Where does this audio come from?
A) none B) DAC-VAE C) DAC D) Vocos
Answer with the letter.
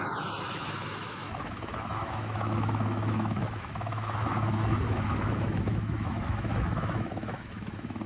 B